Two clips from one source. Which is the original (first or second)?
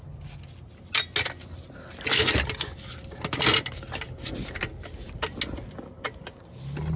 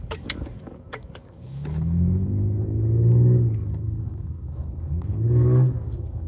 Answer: first